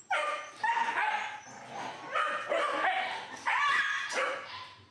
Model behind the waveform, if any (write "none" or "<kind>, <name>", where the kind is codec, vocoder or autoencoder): none